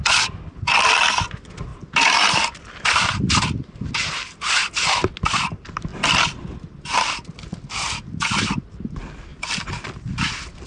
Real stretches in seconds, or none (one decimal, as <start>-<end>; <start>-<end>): 0.0-1.7; 3.9-5.9; 6.9-10.7